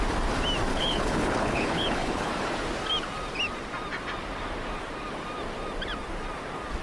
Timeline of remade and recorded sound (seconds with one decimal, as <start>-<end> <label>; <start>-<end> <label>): 0.0-0.7 recorded; 0.7-2.3 remade; 2.3-6.8 recorded